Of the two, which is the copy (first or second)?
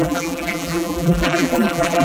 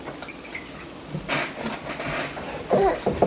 first